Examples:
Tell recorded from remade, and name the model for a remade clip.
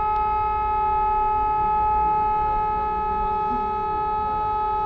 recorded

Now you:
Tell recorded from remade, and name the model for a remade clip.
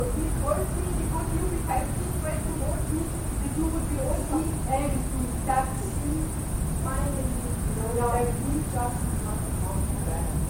recorded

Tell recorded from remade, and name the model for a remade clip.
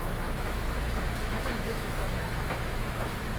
remade, autoencoder, DAC-VAE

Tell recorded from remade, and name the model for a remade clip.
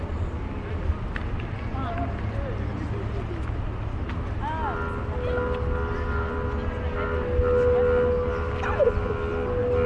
recorded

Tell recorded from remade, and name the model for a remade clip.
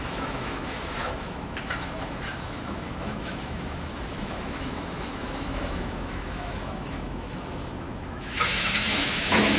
remade, autoencoder, DAC-VAE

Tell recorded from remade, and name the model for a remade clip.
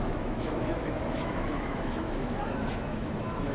remade, autoencoder, DAC-VAE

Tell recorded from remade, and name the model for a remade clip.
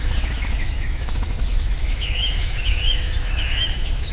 remade, autoencoder, DAC-VAE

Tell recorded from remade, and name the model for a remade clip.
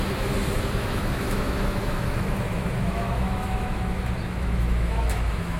remade, autoencoder, DAC-VAE